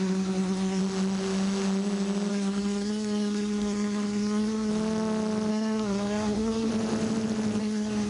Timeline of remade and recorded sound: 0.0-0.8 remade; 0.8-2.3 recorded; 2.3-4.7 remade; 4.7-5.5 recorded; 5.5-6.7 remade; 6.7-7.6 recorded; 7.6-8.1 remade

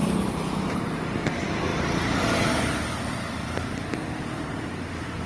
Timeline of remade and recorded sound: 0.0-0.8 remade; 0.8-1.7 recorded; 1.7-5.3 remade

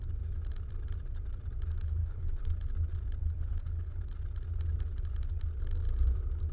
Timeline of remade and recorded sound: 0.0-2.0 recorded; 2.0-2.5 remade; 2.5-3.2 recorded; 3.2-4.0 remade; 4.0-6.5 recorded

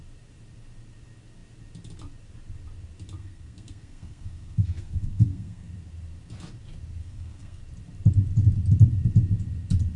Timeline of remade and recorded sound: 0.0-3.2 recorded; 3.2-5.7 remade; 5.7-7.0 recorded; 7.0-7.6 remade; 7.6-10.0 recorded

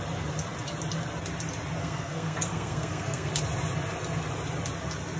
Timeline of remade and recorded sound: 0.0-1.8 recorded; 1.8-3.3 remade; 3.3-5.2 recorded

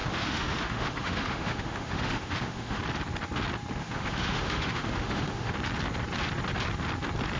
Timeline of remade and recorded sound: 0.0-2.8 remade; 2.8-3.8 recorded; 3.8-5.5 remade; 5.5-7.4 recorded

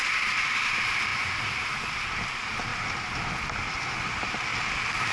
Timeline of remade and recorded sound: 0.0-1.1 remade; 1.1-1.9 recorded; 1.9-2.7 remade; 2.7-4.0 recorded; 4.0-4.5 remade; 4.5-5.1 recorded

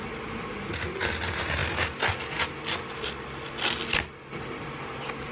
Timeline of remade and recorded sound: 0.0-5.3 recorded